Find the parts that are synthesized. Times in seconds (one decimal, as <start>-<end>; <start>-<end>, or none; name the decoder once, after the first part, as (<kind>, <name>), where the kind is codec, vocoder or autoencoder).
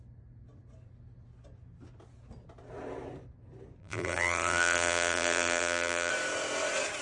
3.8-6.1 (vocoder, BigVGAN v2)